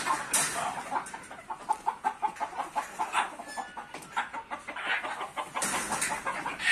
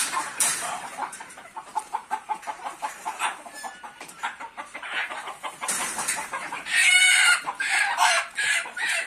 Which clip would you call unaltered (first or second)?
first